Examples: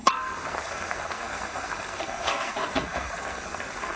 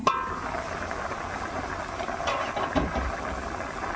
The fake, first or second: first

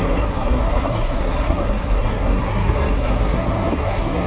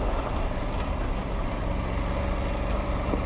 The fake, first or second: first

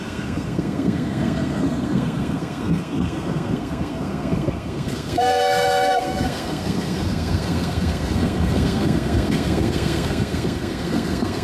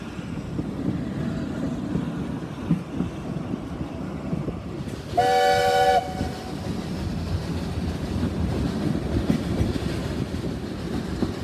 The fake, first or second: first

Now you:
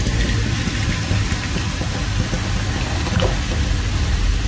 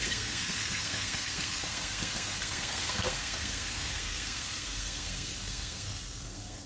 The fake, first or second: second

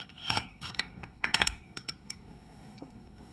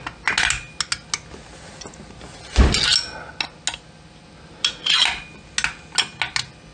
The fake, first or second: first